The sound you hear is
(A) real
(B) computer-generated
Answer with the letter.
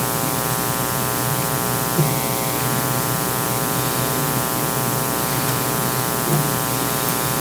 A